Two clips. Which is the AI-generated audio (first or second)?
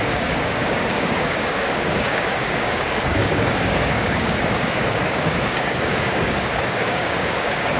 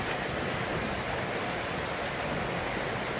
first